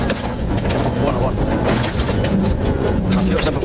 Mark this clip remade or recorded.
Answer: remade